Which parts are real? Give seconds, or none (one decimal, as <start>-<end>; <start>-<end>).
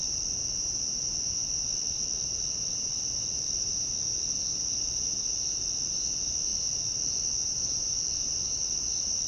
none